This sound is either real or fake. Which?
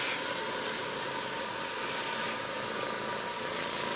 real